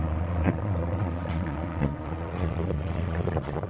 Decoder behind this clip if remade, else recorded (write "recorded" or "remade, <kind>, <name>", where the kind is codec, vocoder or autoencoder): remade, vocoder, Vocos